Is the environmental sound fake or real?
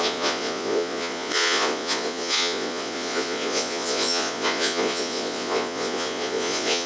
fake